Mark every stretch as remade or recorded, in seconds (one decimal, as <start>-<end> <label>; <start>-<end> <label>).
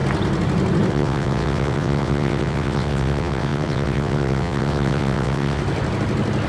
0.0-0.9 recorded; 0.9-5.6 remade; 5.6-6.5 recorded